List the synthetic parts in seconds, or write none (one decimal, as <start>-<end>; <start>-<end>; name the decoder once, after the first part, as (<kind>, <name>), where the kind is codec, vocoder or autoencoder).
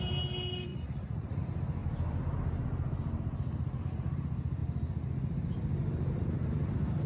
0.7-1.4 (vocoder, Vocos)